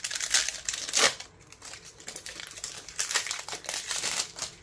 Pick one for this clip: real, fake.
fake